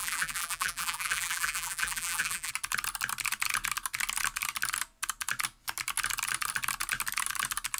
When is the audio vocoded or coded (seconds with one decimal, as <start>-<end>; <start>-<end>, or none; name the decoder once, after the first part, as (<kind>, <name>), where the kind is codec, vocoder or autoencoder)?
0.0-2.5 (vocoder, BigVGAN v2)